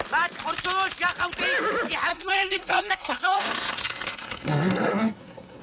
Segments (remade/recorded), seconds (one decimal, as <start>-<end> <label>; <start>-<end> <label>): 0.0-2.1 recorded; 2.1-5.6 remade

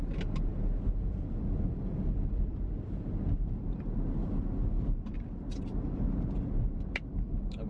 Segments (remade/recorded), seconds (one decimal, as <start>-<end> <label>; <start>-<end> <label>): 0.0-7.7 recorded

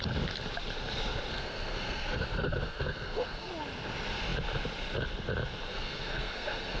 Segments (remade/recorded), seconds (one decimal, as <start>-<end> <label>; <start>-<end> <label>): 0.0-1.3 recorded; 1.3-3.5 remade; 3.5-5.7 recorded; 5.7-6.8 remade

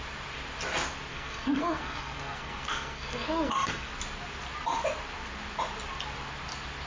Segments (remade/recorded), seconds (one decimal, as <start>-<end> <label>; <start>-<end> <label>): 0.0-1.1 recorded; 1.1-3.9 remade; 3.9-6.9 recorded

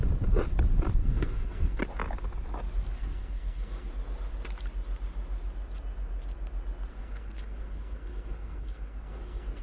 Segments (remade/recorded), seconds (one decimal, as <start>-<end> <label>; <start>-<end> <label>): 0.0-1.0 recorded; 1.0-1.8 remade; 1.8-3.0 recorded; 3.0-3.9 remade; 3.9-6.9 recorded; 6.9-9.6 remade

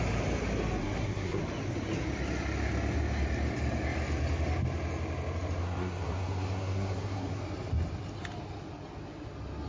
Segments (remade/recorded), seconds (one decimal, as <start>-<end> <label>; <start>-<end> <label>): 0.0-0.8 recorded; 0.8-1.4 remade; 1.4-5.6 recorded; 5.6-7.4 remade; 7.4-9.7 recorded

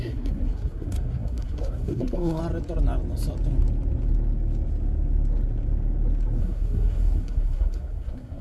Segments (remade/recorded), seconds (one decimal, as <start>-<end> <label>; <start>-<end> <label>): 0.0-2.4 remade; 2.4-6.4 recorded; 6.4-8.4 remade